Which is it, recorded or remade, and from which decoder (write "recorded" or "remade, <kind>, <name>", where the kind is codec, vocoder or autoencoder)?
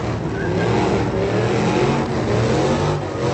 recorded